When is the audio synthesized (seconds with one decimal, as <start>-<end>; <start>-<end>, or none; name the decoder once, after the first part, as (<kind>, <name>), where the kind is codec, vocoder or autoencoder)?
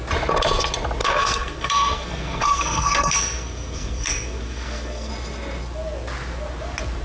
1.0-5.1 (codec, SNAC)